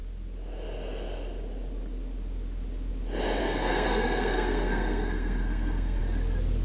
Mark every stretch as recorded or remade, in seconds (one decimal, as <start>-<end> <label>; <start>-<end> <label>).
0.0-3.4 recorded; 3.4-6.0 remade; 6.0-6.6 recorded